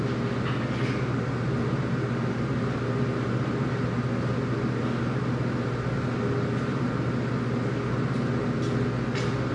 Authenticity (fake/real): real